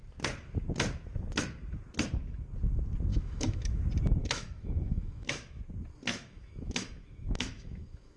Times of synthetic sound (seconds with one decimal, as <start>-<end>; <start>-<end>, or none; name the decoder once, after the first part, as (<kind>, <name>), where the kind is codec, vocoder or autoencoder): 3.1-3.8 (autoencoder, DAC-VAE); 4.2-5.6; 6.1-8.2